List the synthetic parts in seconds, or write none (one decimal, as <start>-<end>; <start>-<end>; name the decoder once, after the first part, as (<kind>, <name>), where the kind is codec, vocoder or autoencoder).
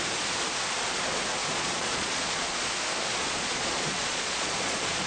1.4-2.7 (vocoder, Vocos); 3.1-5.1